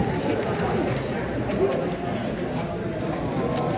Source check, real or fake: real